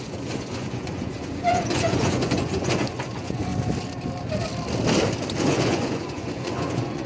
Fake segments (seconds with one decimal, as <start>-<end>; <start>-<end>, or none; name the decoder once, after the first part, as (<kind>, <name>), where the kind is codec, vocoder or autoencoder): 0.0-3.5 (vocoder, Vocos); 5.4-7.1